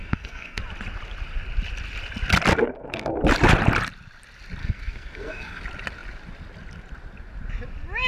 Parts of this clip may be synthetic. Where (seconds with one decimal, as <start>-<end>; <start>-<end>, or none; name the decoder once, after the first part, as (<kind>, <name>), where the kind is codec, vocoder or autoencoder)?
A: 0.0-0.6 (codec, SNAC); 2.5-3.2; 4.6-5.6